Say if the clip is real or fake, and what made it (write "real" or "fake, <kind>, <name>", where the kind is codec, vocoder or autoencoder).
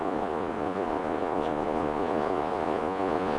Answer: fake, vocoder, Vocos